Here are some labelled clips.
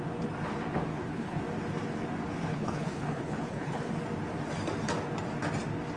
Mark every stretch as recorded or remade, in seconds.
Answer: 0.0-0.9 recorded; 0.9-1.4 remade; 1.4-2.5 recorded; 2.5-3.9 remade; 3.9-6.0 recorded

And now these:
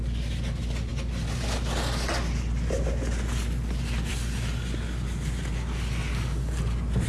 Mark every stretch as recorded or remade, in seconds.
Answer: 0.0-7.1 recorded

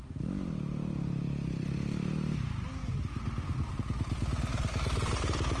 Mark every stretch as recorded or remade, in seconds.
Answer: 0.0-5.6 recorded